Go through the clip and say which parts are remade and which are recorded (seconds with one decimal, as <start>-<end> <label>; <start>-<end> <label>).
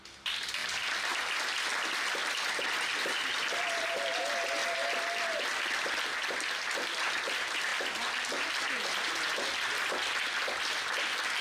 0.0-7.7 recorded; 7.7-10.6 remade; 10.6-11.4 recorded